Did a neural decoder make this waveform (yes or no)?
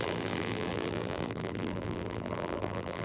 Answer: yes